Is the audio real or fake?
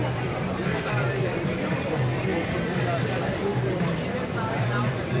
fake